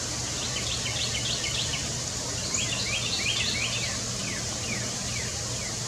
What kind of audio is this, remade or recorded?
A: recorded